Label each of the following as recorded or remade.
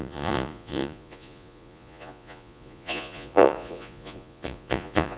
remade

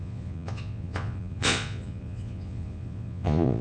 remade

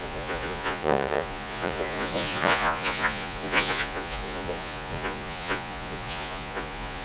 remade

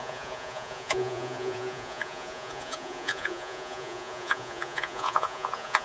remade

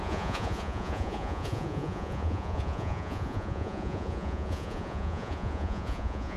remade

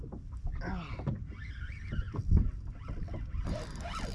recorded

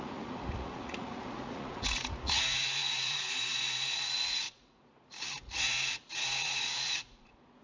remade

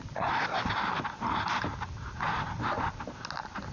recorded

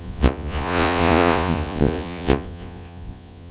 remade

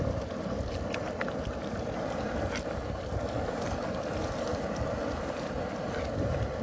recorded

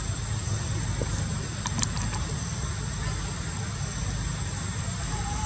recorded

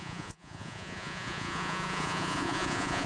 remade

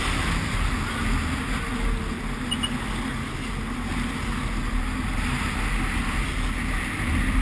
recorded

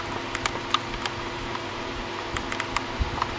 recorded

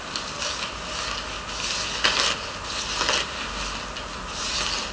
recorded